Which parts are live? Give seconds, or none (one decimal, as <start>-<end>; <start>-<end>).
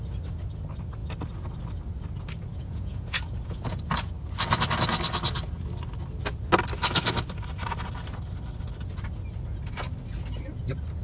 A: 0.0-2.5; 3.8-11.0